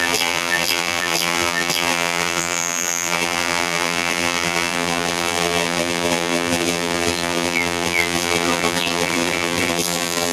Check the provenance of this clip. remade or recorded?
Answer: remade